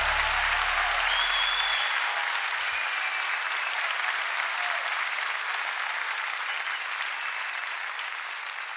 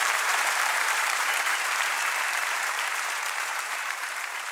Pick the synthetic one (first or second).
second